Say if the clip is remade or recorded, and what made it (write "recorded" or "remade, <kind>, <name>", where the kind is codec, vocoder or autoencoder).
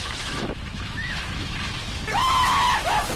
remade, autoencoder, DAC-VAE